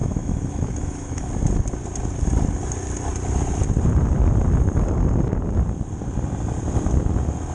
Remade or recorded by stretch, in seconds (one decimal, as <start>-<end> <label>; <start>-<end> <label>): 0.0-1.3 remade; 1.3-7.5 recorded